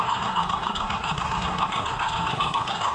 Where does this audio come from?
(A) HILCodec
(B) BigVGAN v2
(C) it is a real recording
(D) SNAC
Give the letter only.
D